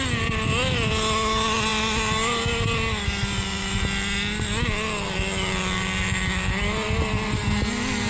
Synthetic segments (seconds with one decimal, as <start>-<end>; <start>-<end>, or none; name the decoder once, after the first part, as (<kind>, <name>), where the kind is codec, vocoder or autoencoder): none